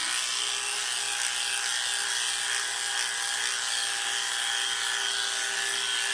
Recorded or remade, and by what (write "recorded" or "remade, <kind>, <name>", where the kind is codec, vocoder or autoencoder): recorded